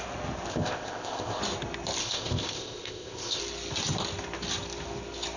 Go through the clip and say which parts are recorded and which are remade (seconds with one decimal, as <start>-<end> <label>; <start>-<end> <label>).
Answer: 0.0-0.5 recorded; 0.5-1.4 remade; 1.4-2.0 recorded; 2.0-3.4 remade; 3.4-5.4 recorded